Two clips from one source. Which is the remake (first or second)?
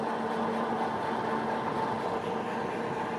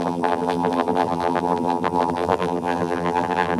second